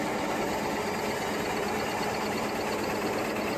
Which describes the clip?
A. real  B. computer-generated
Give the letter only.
A